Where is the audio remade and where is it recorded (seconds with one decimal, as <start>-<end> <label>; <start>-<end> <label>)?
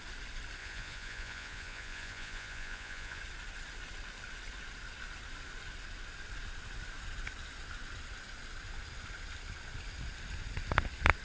0.0-0.6 recorded; 0.6-3.2 remade; 3.2-11.2 recorded